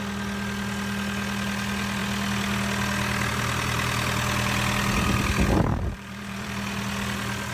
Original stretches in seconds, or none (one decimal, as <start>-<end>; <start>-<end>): 0.0-5.7; 6.5-7.5